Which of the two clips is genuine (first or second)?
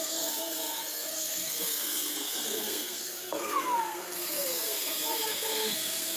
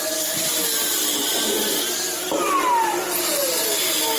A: second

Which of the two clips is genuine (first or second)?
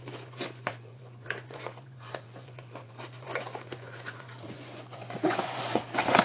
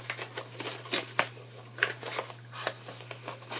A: second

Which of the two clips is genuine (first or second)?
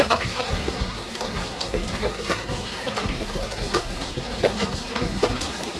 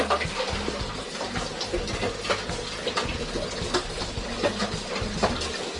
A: second